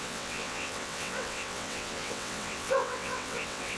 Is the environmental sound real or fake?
fake